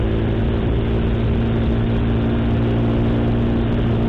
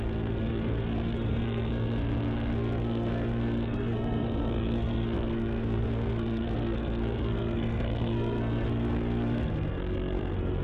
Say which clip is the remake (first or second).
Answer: second